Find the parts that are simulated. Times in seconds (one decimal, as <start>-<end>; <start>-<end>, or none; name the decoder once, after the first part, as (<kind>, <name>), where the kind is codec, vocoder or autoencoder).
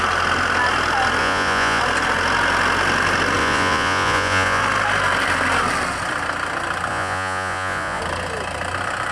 1.2-1.8 (vocoder, Vocos); 3.4-4.6; 6.9-8.0